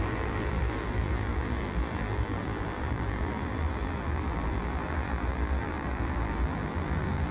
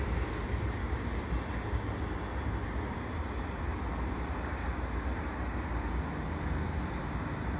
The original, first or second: second